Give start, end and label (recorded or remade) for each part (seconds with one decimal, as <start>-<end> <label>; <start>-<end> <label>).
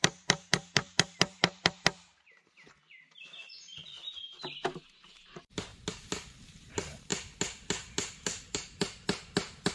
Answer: 0.0-5.7 remade; 5.7-6.4 recorded; 6.4-7.1 remade; 7.1-9.7 recorded